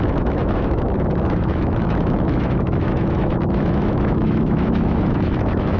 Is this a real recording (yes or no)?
no